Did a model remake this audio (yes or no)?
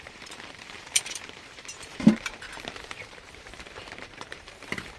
yes